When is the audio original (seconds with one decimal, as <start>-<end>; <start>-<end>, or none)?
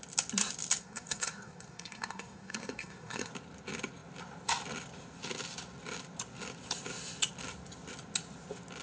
0.0-0.8; 3.3-8.8